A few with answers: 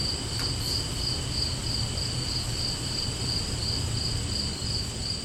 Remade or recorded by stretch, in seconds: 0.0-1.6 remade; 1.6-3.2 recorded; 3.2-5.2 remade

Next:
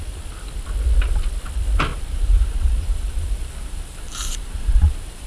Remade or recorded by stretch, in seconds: 0.0-1.9 recorded; 1.9-5.3 remade

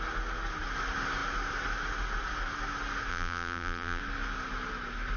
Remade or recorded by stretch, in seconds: 0.0-3.1 recorded; 3.1-4.0 remade; 4.0-5.2 recorded

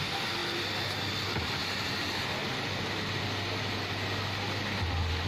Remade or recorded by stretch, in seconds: 0.0-5.3 recorded

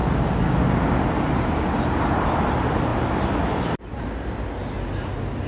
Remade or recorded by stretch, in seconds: 0.0-2.9 recorded; 2.9-3.5 remade; 3.5-5.5 recorded

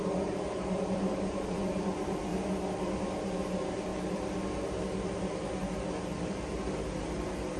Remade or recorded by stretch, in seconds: 0.0-2.3 remade; 2.3-2.9 recorded; 2.9-7.6 remade

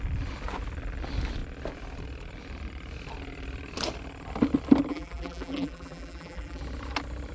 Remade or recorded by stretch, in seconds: 0.0-4.9 recorded; 4.9-6.6 remade; 6.6-7.3 recorded

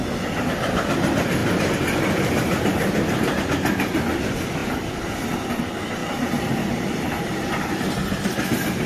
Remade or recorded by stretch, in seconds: 0.0-1.4 recorded; 1.4-3.4 remade; 3.4-6.0 recorded; 6.0-7.2 remade; 7.2-8.9 recorded